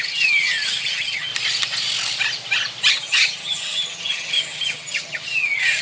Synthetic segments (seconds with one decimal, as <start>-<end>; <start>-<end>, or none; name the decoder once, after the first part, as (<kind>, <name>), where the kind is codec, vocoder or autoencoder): 0.0-1.3 (vocoder, HiFi-GAN); 2.9-5.8